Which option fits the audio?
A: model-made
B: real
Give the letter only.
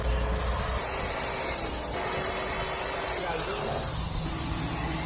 B